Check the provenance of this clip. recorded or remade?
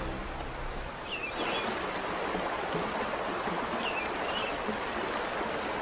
recorded